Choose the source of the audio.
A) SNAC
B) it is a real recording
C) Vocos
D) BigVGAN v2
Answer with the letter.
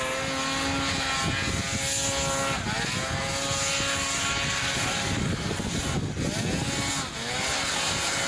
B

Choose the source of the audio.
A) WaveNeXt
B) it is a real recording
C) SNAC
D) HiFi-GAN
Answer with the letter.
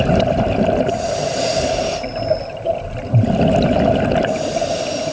B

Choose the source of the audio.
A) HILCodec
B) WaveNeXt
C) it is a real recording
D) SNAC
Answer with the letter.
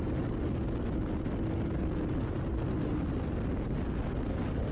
C